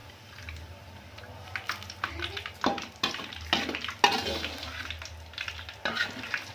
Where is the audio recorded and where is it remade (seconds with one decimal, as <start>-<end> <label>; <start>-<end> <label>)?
0.0-1.2 remade; 1.2-6.5 recorded